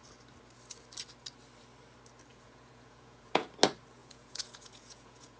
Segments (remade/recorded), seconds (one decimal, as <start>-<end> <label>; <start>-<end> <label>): 0.0-2.3 recorded; 2.3-3.5 remade; 3.5-4.0 recorded; 4.0-5.4 remade